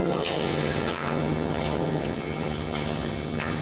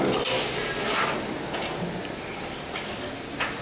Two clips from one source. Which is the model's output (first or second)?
first